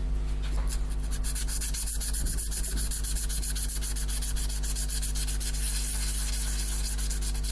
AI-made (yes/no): no